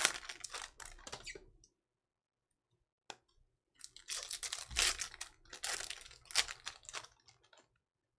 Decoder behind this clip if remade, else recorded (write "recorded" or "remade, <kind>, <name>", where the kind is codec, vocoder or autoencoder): recorded